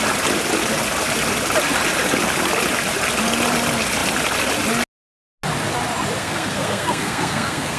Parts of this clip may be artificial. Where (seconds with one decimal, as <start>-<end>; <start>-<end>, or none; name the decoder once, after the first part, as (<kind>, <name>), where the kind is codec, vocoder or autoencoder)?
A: 6.2-7.8 (codec, SNAC)